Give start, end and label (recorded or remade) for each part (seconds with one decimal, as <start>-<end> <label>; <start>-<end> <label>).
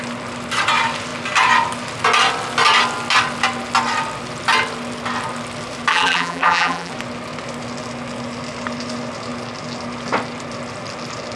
0.0-5.9 recorded; 5.9-6.9 remade; 6.9-11.4 recorded